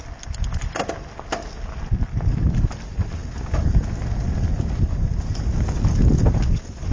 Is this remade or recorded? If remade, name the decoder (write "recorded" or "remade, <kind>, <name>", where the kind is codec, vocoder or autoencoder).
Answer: recorded